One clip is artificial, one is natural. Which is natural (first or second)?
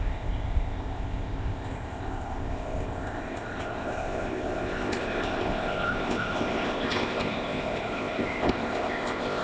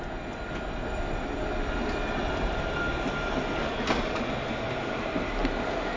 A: second